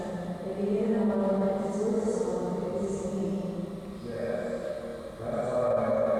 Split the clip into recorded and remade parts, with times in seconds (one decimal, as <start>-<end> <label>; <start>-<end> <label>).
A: 0.0-4.9 recorded; 4.9-5.4 remade; 5.4-6.2 recorded

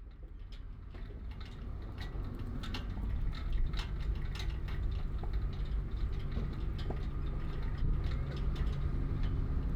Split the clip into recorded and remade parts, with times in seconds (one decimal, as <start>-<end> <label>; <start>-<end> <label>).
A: 0.0-0.7 recorded; 0.7-2.1 remade; 2.1-9.8 recorded